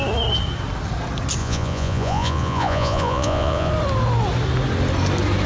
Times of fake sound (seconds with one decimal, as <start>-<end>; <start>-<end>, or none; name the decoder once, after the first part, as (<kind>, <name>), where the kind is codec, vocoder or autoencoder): 1.4-3.7 (vocoder, Vocos)